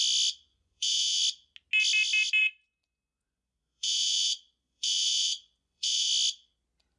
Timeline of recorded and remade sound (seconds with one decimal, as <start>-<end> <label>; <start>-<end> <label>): 0.0-0.5 recorded; 0.5-1.2 remade; 1.2-2.4 recorded; 2.4-6.1 remade; 6.1-7.0 recorded